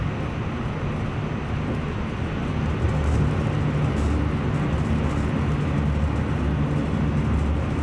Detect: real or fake real